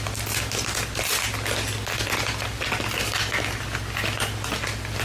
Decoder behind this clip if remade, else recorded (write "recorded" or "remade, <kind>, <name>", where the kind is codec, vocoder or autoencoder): recorded